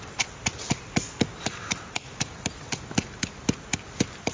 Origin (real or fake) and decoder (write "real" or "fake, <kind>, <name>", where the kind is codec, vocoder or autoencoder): real